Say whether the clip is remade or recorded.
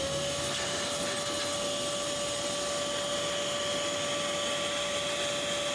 recorded